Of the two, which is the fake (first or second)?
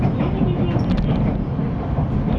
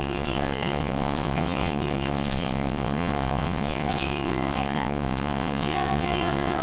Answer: second